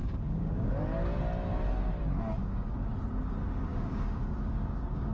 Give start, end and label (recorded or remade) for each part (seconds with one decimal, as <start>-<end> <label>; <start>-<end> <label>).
0.0-0.7 remade; 0.7-2.4 recorded; 2.4-2.9 remade; 2.9-3.7 recorded; 3.7-5.1 remade